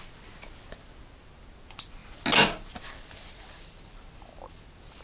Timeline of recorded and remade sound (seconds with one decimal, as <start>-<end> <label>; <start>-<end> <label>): 0.0-5.0 recorded